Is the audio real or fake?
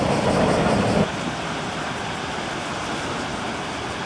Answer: real